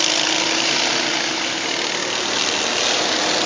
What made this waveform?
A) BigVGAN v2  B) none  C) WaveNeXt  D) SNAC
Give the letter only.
B